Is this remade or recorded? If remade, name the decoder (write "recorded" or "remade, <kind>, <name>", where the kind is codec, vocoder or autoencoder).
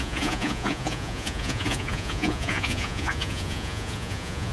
remade, vocoder, Vocos